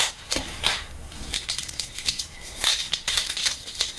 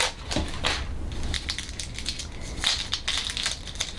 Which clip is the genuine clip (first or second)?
second